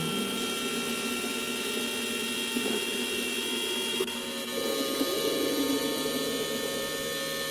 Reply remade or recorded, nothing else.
recorded